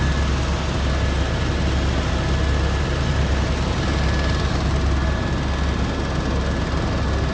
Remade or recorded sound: recorded